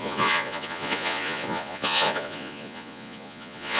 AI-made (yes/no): yes